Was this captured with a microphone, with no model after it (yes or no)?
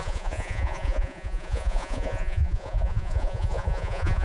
no